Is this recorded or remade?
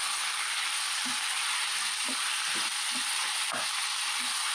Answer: recorded